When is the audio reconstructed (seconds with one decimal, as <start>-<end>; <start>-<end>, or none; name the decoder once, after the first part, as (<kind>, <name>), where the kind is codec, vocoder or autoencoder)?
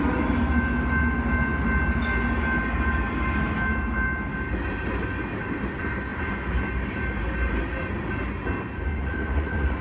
8.9-9.8 (vocoder, Vocos)